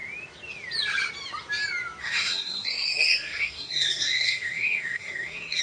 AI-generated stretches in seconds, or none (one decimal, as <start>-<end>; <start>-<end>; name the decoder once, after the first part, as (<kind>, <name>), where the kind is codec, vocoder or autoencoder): 2.0-5.6 (codec, SNAC)